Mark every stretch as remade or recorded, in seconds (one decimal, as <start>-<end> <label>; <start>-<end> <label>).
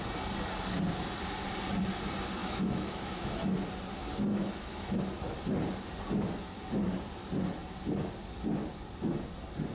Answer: 0.0-2.4 recorded; 2.4-3.5 remade; 3.5-4.3 recorded; 4.3-5.0 remade; 5.0-9.7 recorded